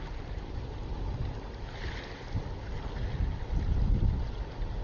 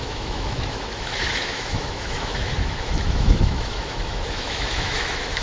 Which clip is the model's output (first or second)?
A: second